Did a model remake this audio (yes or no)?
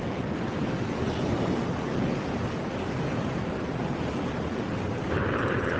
no